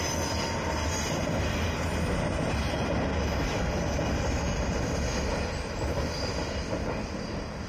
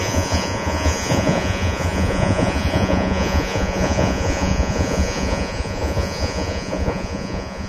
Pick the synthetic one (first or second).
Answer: second